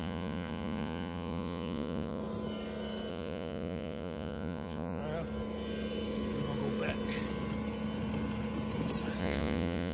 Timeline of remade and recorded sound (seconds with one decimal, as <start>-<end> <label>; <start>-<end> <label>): 0.0-2.2 remade; 2.2-3.1 recorded; 3.1-5.0 remade; 5.0-9.2 recorded; 9.2-9.9 remade